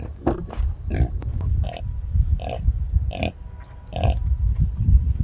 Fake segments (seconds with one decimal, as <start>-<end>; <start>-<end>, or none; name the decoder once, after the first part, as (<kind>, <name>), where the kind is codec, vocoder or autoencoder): none